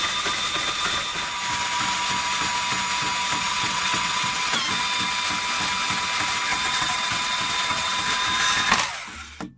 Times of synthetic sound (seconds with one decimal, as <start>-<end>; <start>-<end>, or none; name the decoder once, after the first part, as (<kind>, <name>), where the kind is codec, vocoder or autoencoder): 3.4-4.6 (vocoder, WaveNeXt); 6.5-8.0